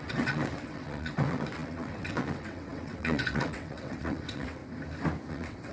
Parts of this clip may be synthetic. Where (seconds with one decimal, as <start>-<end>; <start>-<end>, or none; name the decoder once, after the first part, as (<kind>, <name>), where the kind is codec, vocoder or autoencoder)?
0.0-4.6 (vocoder, WaveNeXt); 5.3-5.7